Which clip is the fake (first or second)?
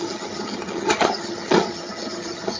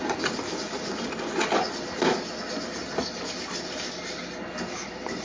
first